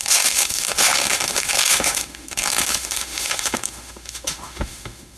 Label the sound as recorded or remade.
remade